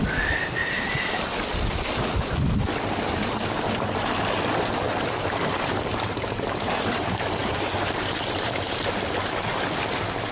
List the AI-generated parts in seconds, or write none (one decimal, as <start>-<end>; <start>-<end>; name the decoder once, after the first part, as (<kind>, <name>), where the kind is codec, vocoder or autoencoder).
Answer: 0.6-1.1 (vocoder, BigVGAN v2); 5.5-8.7